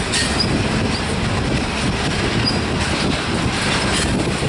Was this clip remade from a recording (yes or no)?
no